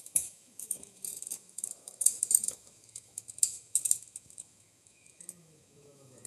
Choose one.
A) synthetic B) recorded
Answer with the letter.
A